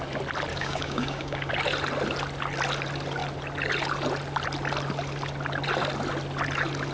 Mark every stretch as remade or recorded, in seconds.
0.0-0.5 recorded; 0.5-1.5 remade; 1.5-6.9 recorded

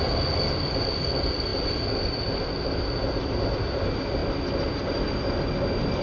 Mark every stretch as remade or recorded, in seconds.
0.0-6.0 recorded

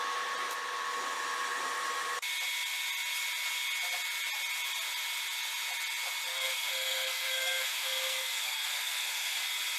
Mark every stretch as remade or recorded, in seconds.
0.0-6.3 recorded; 6.3-9.4 remade; 9.4-9.8 recorded

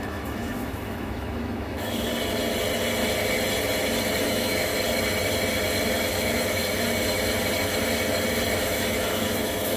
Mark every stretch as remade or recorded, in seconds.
0.0-2.1 remade; 2.1-4.2 recorded; 4.2-4.7 remade; 4.7-5.9 recorded; 5.9-6.6 remade; 6.6-8.6 recorded; 8.6-9.8 remade

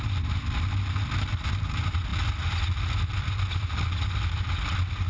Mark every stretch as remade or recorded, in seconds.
0.0-5.1 recorded

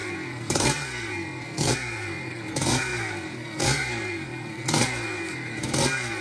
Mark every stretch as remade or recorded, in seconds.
0.0-6.2 remade